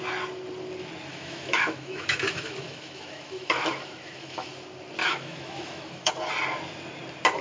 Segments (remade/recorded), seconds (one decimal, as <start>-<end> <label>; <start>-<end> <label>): 0.0-1.1 recorded; 1.1-4.5 remade; 4.5-5.0 recorded; 5.0-6.1 remade; 6.1-7.4 recorded